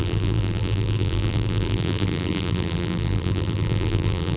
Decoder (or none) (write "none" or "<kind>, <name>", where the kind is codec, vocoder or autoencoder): vocoder, BigVGAN v2